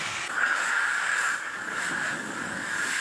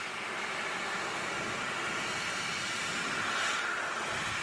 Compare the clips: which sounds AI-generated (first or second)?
first